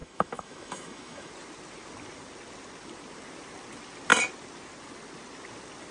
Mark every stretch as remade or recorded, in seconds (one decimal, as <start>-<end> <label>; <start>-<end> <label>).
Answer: 0.0-1.3 remade; 1.3-5.9 recorded